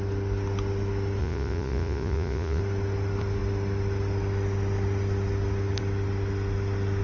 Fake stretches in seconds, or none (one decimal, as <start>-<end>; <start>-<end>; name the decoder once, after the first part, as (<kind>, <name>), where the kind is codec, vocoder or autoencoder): 1.2-2.6 (vocoder, Vocos)